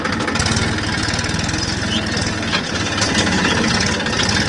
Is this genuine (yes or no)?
yes